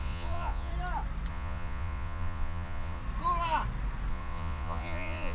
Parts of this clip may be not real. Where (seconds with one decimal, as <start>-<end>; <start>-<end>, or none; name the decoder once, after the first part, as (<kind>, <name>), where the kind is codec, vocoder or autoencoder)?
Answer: 0.0-0.7 (vocoder, Vocos); 1.3-3.0; 4.1-5.3